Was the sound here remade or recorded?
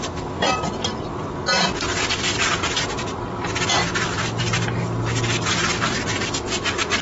recorded